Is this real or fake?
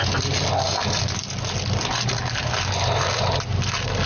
real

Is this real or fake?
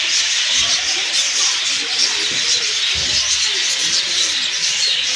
real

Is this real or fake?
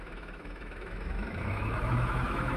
fake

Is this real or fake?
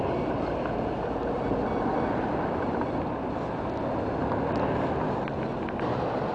real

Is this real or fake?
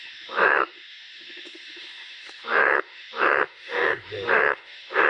fake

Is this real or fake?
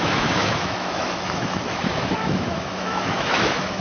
fake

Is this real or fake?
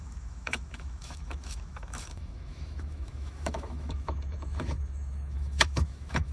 fake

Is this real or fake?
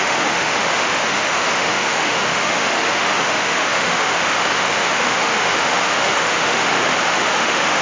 fake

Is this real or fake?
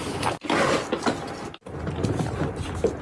real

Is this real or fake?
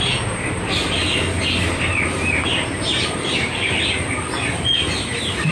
real